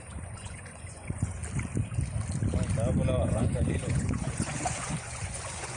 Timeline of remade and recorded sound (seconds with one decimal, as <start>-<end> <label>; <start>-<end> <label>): 0.0-1.4 remade; 1.4-3.2 recorded; 3.2-5.8 remade